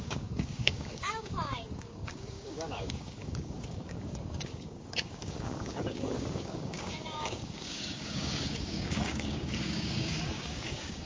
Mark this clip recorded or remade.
remade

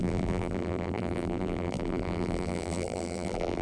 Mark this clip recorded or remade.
remade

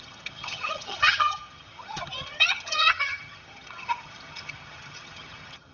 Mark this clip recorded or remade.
remade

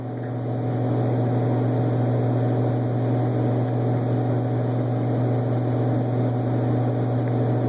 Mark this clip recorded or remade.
recorded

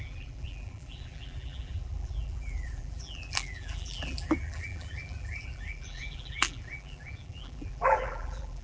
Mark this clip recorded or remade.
remade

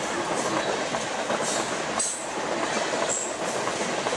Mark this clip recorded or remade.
recorded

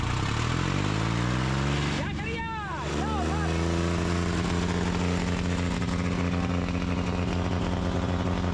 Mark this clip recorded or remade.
recorded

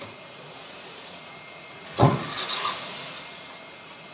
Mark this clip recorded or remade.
remade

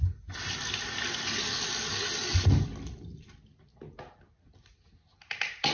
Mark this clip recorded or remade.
recorded